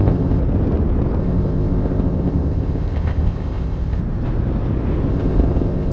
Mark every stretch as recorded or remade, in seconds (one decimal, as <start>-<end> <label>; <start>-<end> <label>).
0.0-0.4 remade; 0.4-1.2 recorded; 1.2-4.0 remade; 4.0-5.1 recorded; 5.1-5.9 remade